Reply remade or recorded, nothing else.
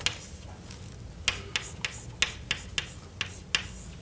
recorded